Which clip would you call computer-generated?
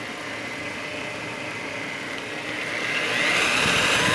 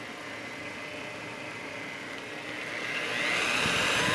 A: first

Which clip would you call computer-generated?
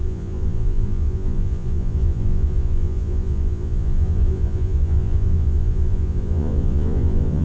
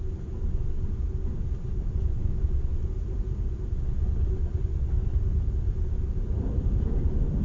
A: first